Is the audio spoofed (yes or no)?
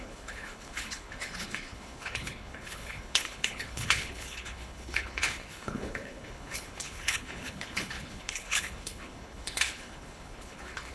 yes